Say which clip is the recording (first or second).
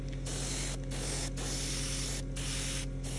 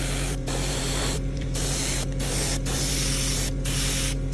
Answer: first